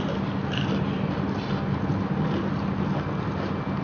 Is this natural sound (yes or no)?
yes